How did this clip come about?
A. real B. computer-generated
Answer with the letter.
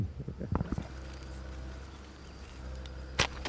A